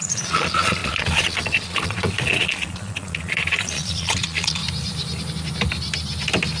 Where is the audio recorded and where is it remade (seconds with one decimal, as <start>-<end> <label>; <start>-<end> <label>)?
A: 0.0-4.6 remade; 4.6-6.6 recorded